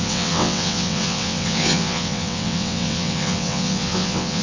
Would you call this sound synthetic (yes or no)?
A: yes